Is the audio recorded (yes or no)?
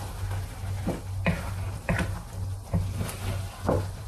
yes